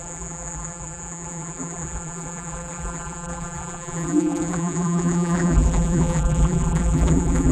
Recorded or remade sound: remade